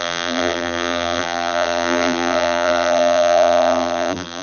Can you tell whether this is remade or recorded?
remade